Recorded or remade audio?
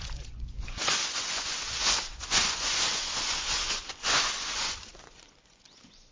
remade